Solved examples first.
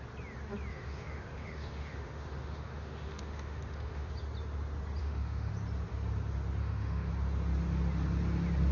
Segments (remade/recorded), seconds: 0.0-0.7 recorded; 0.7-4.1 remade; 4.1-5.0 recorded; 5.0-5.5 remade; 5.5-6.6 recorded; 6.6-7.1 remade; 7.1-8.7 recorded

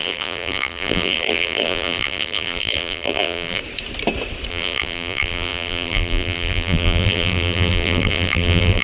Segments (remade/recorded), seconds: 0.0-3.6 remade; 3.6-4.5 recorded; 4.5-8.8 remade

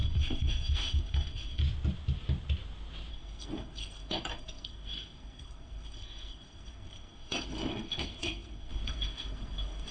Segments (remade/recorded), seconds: 0.0-1.6 remade; 1.6-3.1 recorded; 3.1-9.9 remade

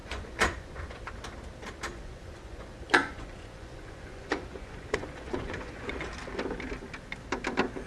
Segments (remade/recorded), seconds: 0.0-1.1 remade; 1.1-1.9 recorded; 1.9-6.1 remade; 6.1-7.9 recorded

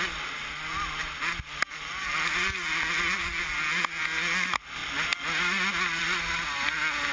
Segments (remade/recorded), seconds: 0.0-7.1 recorded

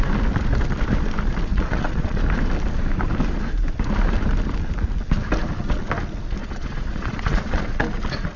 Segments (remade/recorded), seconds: 0.0-1.5 recorded; 1.5-2.2 remade; 2.2-6.4 recorded; 6.4-7.6 remade; 7.6-8.4 recorded

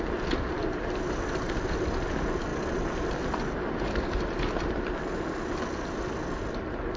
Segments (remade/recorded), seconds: 0.0-7.0 recorded